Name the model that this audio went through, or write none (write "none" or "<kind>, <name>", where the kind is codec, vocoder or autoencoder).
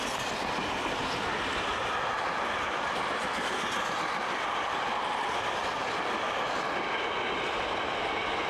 none